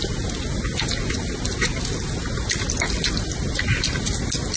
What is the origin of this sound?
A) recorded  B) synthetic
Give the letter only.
A